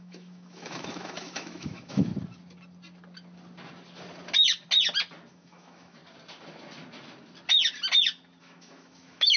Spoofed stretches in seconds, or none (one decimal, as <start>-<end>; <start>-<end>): 0.0-2.1; 5.3-6.0; 8.4-9.4